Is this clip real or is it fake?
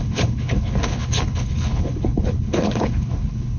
fake